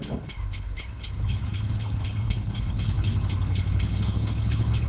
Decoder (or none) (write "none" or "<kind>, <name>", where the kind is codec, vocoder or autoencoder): codec, HILCodec